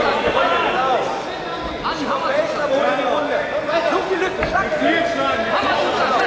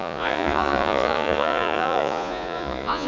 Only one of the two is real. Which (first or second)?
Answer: first